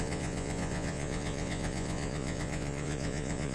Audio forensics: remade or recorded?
remade